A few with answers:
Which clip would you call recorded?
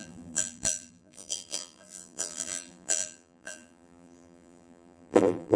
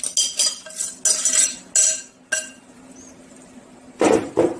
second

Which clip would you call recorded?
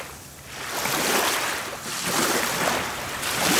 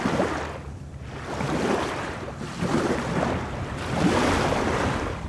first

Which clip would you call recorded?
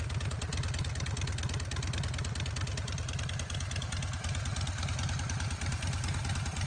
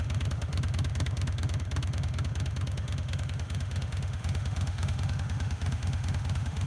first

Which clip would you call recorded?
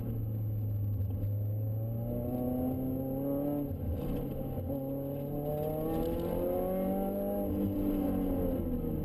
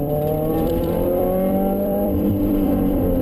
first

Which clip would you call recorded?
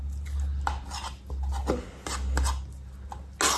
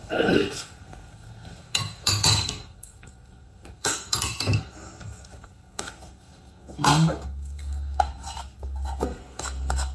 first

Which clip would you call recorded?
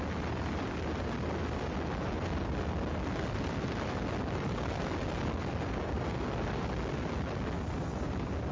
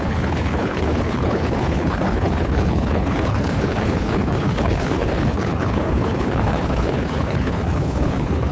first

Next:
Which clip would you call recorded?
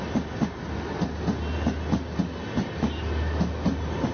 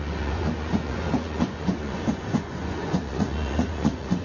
first